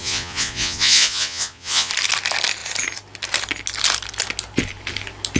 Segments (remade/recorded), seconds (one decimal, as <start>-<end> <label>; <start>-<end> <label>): 0.0-1.9 remade; 1.9-5.4 recorded